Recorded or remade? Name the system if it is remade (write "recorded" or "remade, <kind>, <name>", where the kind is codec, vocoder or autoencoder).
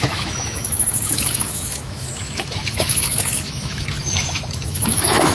remade, autoencoder, DAC-VAE